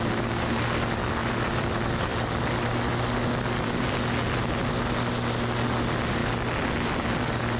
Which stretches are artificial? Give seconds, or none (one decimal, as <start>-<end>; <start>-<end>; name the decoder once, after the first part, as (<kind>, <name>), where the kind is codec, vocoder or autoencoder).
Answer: 1.2-1.7 (vocoder, BigVGAN v2); 3.2-4.5